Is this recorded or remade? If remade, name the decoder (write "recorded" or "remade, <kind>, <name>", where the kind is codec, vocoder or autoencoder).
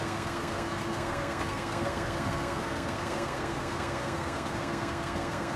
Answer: remade, codec, SNAC